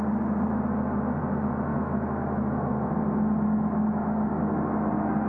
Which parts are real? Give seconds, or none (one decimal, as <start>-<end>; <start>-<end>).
0.0-1.7; 4.5-5.3